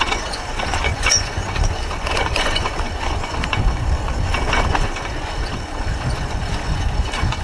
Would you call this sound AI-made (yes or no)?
yes